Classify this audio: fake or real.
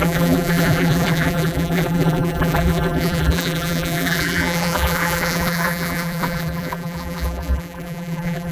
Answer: fake